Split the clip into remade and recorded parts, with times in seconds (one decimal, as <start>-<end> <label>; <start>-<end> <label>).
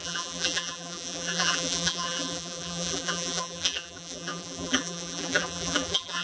0.0-6.2 remade